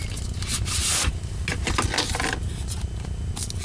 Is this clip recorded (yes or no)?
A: yes